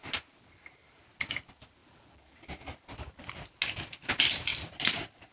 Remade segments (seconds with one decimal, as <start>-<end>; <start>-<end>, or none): none